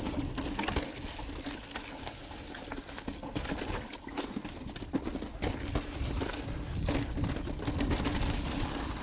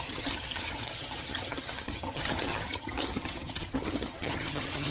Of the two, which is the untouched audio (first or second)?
first